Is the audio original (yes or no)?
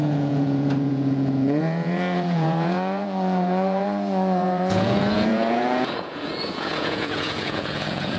no